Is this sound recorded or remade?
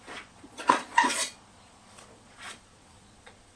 remade